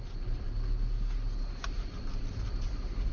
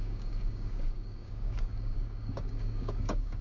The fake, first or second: second